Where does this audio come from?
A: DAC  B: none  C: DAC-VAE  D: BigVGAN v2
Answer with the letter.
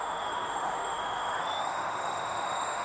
C